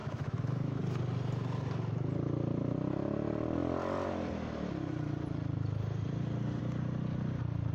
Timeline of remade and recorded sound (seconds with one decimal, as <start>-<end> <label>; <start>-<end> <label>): 0.0-0.8 remade; 0.8-7.7 recorded